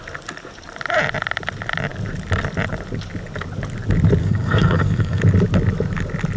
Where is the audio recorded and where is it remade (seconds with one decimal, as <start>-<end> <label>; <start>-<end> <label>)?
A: 0.0-4.2 recorded; 4.2-5.2 remade; 5.2-6.4 recorded